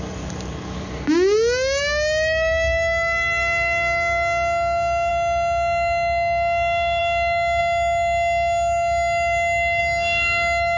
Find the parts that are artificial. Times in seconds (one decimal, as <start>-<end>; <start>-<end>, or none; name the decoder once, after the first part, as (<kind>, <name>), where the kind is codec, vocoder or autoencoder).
none